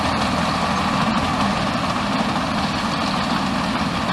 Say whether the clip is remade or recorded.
recorded